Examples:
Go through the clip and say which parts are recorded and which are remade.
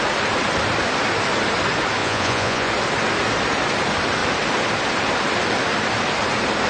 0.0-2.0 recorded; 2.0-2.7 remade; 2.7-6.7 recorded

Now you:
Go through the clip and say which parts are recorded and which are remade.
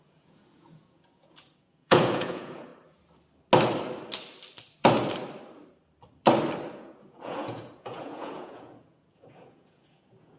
0.0-2.7 remade; 2.7-6.7 recorded; 6.7-10.4 remade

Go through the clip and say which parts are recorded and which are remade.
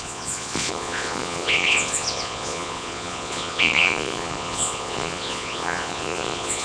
0.0-6.6 remade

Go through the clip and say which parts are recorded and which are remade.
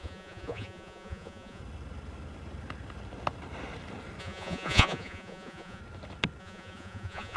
0.0-1.6 remade; 1.6-4.2 recorded; 4.2-5.8 remade; 5.8-6.4 recorded; 6.4-7.4 remade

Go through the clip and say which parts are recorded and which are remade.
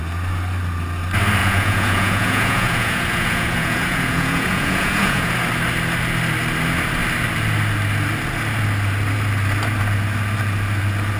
0.0-1.4 recorded; 1.4-5.3 remade; 5.3-11.2 recorded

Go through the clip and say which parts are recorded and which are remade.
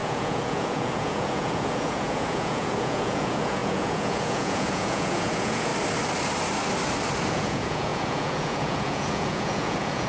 0.0-5.7 remade; 5.7-7.3 recorded; 7.3-10.1 remade